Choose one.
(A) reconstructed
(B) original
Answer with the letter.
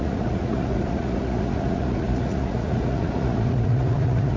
A